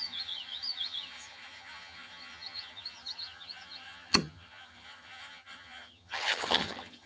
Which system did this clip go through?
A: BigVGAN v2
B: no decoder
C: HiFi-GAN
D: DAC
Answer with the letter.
C